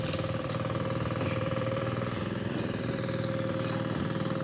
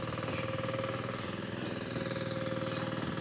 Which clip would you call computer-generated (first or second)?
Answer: first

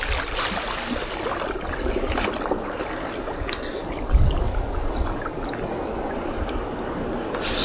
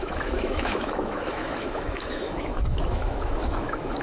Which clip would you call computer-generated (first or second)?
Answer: second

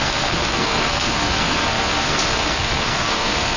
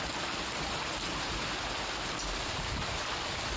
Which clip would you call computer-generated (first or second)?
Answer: first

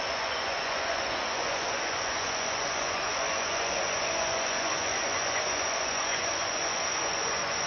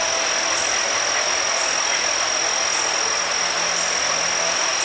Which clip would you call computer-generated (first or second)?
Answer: first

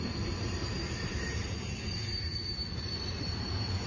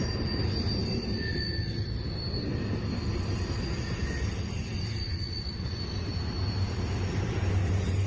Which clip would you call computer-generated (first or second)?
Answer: first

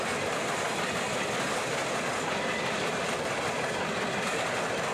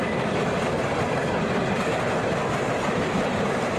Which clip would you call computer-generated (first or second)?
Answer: first